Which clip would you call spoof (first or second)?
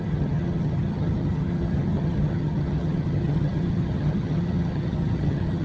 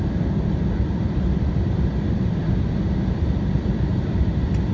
first